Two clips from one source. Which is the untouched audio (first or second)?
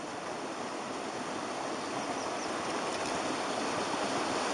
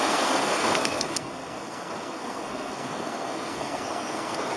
first